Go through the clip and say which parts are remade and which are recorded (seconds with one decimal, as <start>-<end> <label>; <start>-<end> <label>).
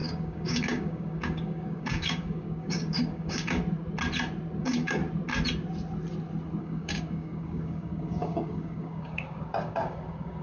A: 0.0-3.6 remade; 3.6-4.6 recorded; 4.6-5.0 remade; 5.0-6.6 recorded; 6.6-10.4 remade